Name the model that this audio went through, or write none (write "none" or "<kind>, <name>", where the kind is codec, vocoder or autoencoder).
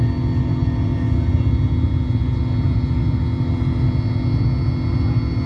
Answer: none